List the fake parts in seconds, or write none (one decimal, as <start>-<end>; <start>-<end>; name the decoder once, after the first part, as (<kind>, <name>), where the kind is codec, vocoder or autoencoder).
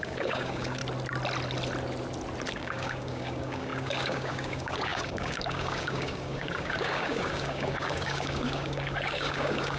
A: 0.0-0.8 (codec, DAC); 2.5-9.8